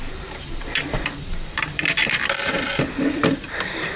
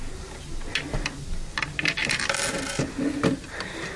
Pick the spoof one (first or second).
first